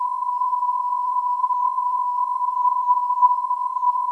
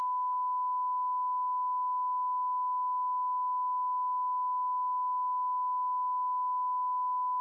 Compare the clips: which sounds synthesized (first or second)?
first